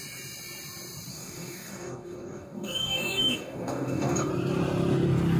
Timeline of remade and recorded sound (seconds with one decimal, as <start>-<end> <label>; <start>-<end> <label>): 0.0-1.1 recorded; 1.1-4.3 remade; 4.3-5.4 recorded